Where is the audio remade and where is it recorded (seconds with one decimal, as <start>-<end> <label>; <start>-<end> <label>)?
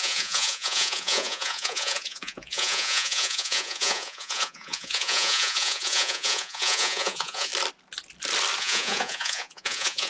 0.0-7.5 remade; 7.5-8.6 recorded; 8.6-10.1 remade